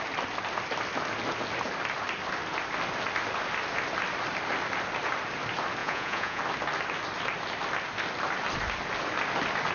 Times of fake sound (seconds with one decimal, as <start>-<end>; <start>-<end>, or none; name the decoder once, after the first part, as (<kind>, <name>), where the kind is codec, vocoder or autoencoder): 5.8-6.4 (vocoder, Vocos)